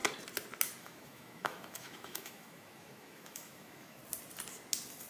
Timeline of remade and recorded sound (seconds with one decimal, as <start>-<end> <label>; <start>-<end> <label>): 0.0-0.8 recorded; 0.8-4.0 remade; 4.0-5.1 recorded